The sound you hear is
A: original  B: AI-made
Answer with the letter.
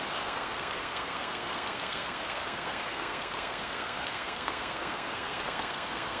B